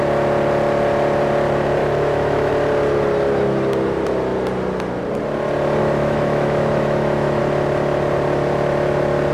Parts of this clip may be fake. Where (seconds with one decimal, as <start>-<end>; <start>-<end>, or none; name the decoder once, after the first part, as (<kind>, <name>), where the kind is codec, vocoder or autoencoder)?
1.8-2.5 (autoencoder, DAC-VAE); 5.8-7.4